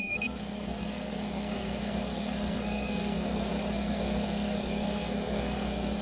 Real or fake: fake